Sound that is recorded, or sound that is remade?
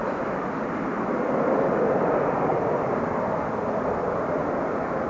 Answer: recorded